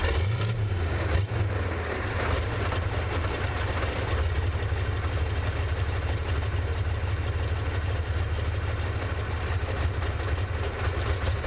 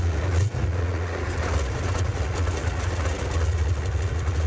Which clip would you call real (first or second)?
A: first